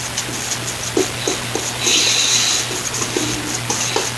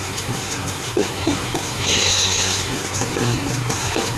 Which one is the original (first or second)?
first